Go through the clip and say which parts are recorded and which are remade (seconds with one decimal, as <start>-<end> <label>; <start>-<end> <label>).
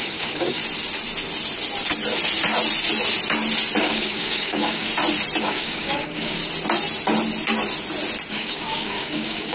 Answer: 0.0-0.6 remade; 0.6-3.8 recorded; 3.8-4.9 remade; 4.9-5.4 recorded; 5.4-6.4 remade; 6.4-8.3 recorded; 8.3-9.5 remade